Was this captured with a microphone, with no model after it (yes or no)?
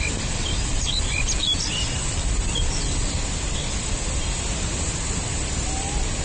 yes